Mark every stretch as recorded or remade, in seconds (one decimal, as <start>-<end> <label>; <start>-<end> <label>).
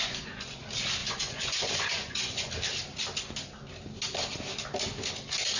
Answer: 0.0-0.6 remade; 0.6-1.0 recorded; 1.0-2.5 remade; 2.5-5.6 recorded